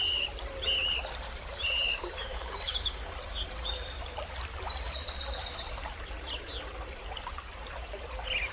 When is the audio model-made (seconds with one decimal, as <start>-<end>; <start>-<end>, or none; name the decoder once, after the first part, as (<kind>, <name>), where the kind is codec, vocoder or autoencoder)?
2.2-3.1 (codec, DAC)